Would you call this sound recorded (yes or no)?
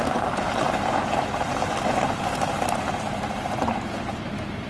no